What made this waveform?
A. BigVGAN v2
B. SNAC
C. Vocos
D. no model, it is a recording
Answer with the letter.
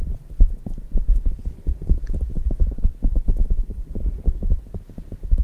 D